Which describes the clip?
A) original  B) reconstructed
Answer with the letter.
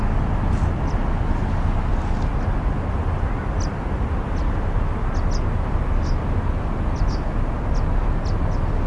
A